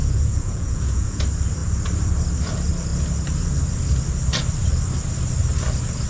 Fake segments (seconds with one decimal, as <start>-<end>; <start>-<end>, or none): 0.0-1.2